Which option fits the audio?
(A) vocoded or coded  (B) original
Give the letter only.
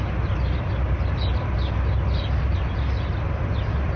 B